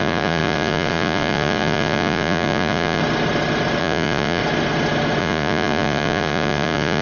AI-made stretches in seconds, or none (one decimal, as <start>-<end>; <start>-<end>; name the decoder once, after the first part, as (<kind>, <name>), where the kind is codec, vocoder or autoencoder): 0.0-3.0 (vocoder, Vocos); 3.8-4.4; 5.2-7.0